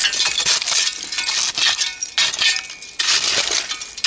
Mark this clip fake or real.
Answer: real